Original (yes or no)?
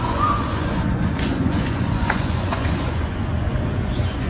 no